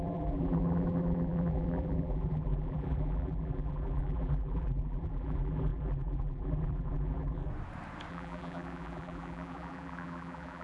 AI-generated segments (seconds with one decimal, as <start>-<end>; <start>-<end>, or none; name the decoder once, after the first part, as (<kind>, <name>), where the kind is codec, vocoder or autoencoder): 0.0-7.5 (vocoder, BigVGAN v2); 8.1-10.6

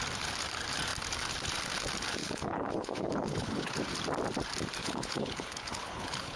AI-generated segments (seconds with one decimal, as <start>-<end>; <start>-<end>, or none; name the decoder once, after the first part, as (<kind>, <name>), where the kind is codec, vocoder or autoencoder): 2.2-3.8 (codec, HILCodec); 4.8-6.4

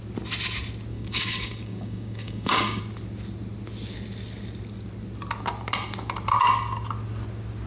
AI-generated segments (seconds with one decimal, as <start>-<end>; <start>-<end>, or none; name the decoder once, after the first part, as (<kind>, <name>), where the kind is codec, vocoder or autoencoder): 0.9-2.8 (codec, DAC)